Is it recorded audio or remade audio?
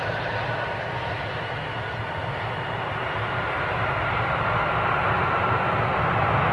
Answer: recorded